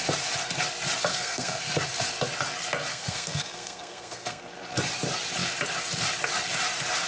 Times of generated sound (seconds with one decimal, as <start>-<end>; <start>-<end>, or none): 1.1-1.6; 2.9-4.4